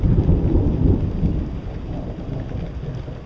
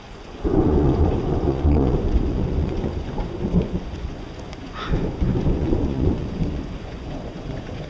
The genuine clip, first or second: first